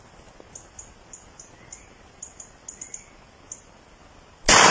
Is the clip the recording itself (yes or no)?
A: yes